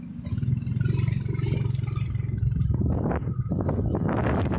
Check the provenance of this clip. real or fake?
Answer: real